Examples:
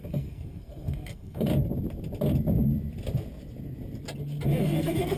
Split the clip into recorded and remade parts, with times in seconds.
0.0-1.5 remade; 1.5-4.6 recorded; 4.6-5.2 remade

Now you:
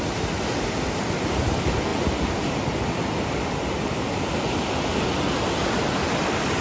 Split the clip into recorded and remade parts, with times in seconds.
0.0-6.6 recorded

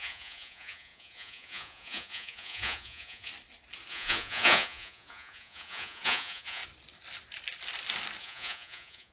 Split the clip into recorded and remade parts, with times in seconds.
0.0-3.3 remade; 3.3-3.9 recorded; 3.9-6.6 remade; 6.6-8.2 recorded; 8.2-9.1 remade

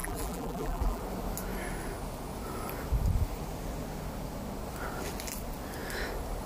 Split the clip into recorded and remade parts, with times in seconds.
0.0-1.0 remade; 1.0-6.5 recorded

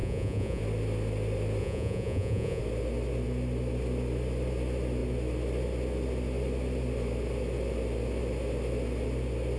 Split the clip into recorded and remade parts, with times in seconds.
0.0-0.6 remade; 0.6-1.6 recorded; 1.6-2.6 remade; 2.6-9.6 recorded

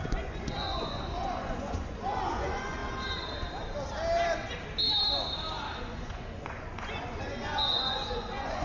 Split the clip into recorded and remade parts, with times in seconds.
0.0-2.8 remade; 2.8-5.8 recorded; 5.8-8.6 remade